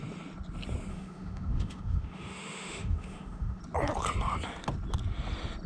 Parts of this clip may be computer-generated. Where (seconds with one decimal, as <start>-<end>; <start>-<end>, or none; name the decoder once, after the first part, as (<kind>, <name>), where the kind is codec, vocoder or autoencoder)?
0.9-3.6 (autoencoder, DAC-VAE)